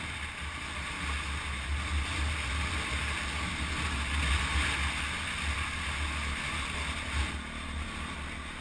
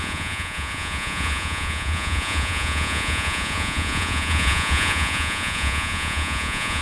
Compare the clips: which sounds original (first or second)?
first